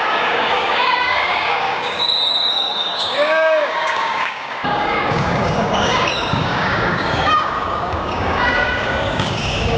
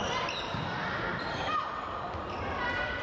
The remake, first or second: first